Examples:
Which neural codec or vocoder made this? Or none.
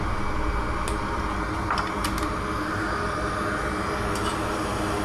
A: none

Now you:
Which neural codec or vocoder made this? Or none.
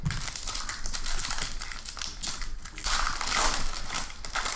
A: none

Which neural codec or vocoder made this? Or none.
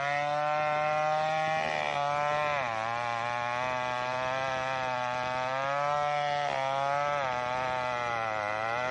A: none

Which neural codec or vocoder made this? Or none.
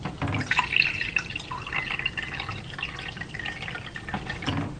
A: none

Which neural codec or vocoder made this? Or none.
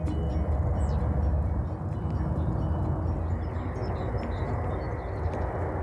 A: none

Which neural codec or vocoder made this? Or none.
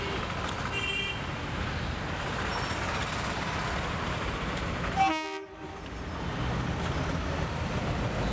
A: none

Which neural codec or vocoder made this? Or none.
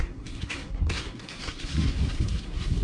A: codec, SNAC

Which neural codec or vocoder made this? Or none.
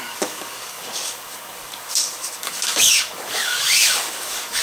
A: codec, DAC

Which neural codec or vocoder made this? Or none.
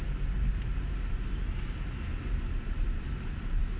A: none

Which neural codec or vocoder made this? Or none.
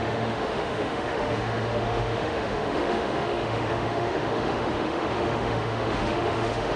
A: autoencoder, DAC-VAE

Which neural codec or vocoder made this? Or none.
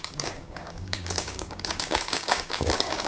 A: codec, DAC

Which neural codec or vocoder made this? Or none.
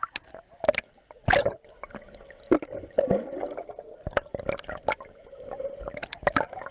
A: none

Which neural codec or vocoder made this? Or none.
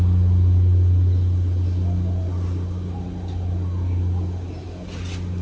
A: none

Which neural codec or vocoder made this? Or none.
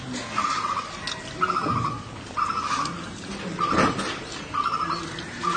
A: none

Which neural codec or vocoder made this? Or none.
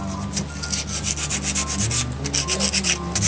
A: none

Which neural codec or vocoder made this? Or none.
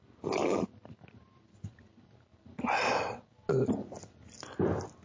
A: none